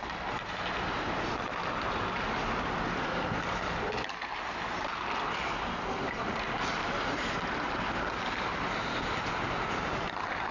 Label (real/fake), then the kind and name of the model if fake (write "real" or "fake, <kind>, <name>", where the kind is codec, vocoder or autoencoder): real